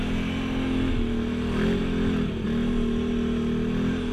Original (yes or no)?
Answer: yes